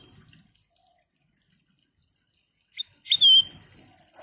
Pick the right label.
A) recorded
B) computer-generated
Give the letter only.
A